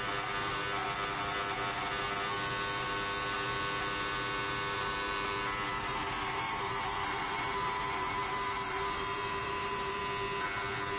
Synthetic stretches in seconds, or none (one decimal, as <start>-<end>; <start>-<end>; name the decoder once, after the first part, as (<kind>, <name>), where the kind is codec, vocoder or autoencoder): 5.7-10.0 (vocoder, BigVGAN v2)